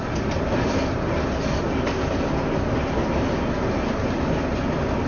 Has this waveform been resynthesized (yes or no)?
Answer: no